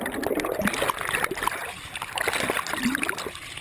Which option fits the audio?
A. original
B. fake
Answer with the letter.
A